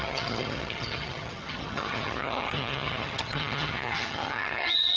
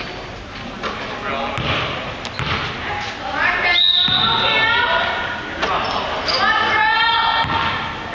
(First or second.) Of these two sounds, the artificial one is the first